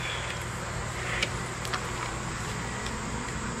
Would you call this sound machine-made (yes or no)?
no